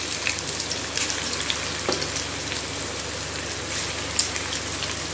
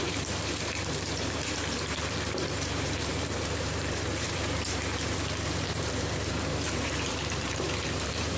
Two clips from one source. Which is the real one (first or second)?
first